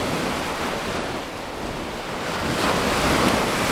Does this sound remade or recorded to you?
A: recorded